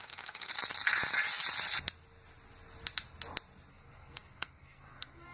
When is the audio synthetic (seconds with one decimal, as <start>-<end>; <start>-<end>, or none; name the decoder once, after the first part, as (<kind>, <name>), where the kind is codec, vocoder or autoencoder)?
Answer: 0.0-0.5 (codec, SNAC); 3.7-5.3